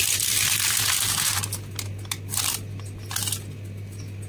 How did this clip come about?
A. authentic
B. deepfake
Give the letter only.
A